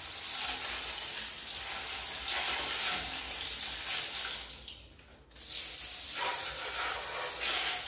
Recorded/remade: recorded